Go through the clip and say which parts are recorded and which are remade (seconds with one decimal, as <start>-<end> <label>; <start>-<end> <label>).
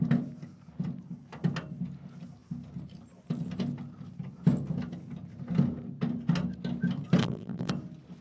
0.0-7.2 recorded; 7.2-7.7 remade; 7.7-8.2 recorded